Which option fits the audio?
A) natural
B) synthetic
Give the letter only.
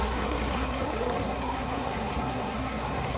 B